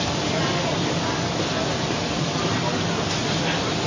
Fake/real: real